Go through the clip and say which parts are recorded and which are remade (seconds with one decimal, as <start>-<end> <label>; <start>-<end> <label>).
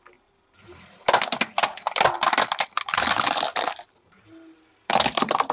0.0-5.5 recorded